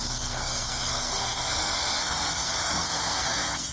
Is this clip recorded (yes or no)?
no